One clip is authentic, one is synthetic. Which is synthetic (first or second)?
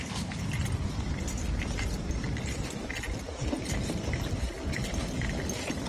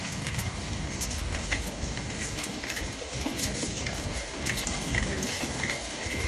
second